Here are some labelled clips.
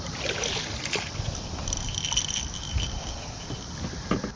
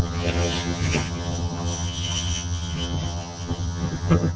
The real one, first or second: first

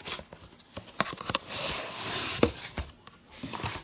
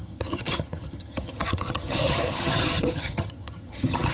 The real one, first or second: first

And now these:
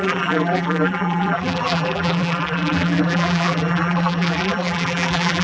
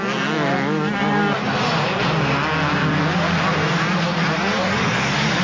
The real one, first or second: second